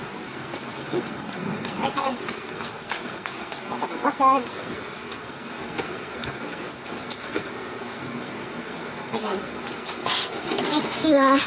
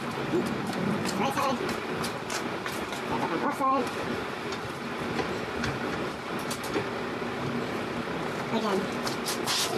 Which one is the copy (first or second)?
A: first